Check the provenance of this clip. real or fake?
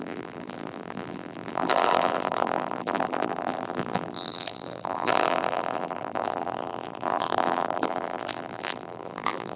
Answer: fake